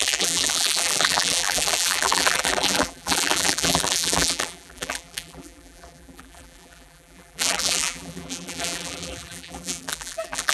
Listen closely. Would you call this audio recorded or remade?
remade